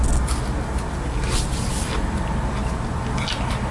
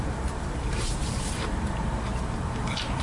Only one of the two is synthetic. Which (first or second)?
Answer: second